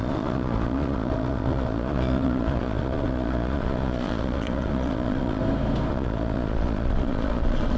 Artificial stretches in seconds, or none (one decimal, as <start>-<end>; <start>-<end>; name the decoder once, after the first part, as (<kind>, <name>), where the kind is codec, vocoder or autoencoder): 0.0-5.4 (vocoder, Vocos); 5.9-7.8